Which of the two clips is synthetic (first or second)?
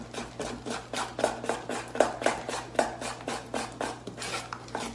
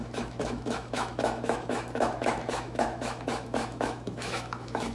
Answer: second